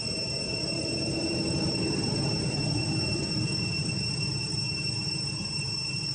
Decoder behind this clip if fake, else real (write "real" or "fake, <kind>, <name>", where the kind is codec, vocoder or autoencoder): fake, vocoder, BigVGAN v2